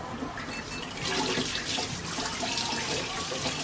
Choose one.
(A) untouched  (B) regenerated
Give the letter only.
A